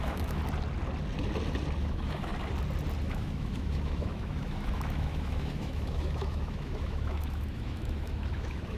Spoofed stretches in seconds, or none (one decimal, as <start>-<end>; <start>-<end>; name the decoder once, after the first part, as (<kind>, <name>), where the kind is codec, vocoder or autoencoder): 0.0-0.4 (autoencoder, DAC-VAE); 1.8-2.3; 3.0-8.8